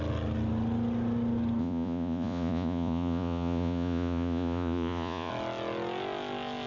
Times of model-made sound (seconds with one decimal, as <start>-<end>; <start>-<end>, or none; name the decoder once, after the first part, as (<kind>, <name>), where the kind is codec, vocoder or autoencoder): 1.6-5.3 (vocoder, Vocos)